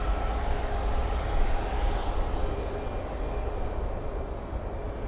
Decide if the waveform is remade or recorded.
recorded